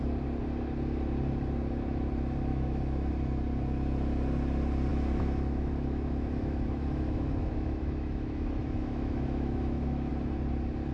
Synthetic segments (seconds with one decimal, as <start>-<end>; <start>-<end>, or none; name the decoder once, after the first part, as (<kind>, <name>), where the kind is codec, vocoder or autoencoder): 2.5-3.1 (autoencoder, DAC-VAE); 4.9-10.1